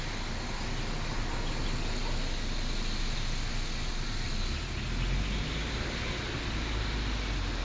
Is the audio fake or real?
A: real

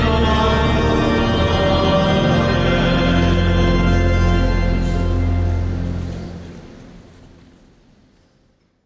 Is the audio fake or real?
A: real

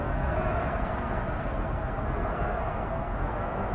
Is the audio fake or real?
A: fake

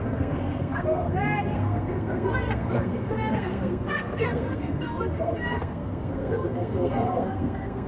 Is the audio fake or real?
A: fake